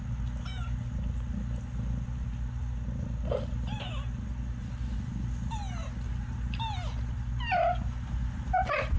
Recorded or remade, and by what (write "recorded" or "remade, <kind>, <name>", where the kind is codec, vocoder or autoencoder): recorded